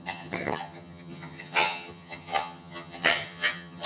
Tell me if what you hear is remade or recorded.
remade